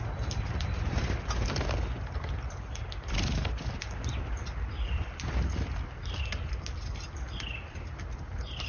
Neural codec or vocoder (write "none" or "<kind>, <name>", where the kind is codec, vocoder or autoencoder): none